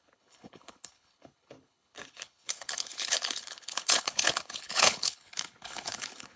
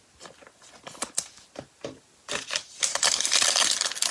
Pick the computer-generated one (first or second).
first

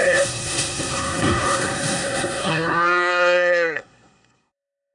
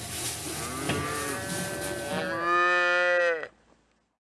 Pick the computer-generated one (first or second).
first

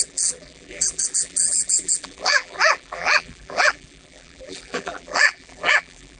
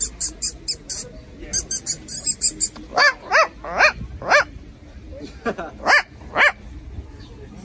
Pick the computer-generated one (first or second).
first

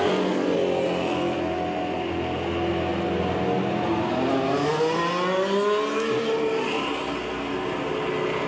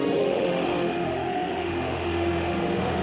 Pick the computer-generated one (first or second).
second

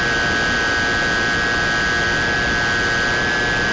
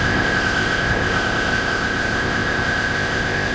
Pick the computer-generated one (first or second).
second